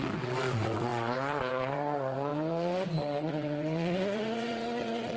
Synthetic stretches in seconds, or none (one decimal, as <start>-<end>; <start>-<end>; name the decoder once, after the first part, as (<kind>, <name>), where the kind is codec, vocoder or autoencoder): 0.0-5.2 (vocoder, WaveNeXt)